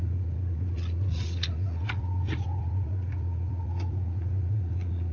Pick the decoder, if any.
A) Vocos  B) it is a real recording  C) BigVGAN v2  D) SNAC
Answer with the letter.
A